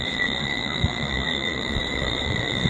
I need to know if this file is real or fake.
fake